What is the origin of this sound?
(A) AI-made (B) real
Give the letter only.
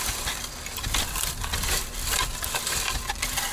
B